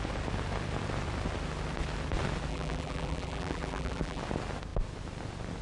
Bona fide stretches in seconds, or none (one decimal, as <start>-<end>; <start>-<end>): 0.0-2.5; 4.2-5.6